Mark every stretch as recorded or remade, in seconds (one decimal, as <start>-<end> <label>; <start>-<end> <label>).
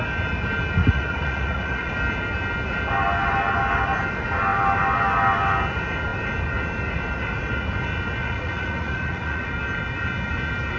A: 0.0-0.8 recorded; 0.8-1.9 remade; 1.9-8.2 recorded; 8.2-9.5 remade; 9.5-10.8 recorded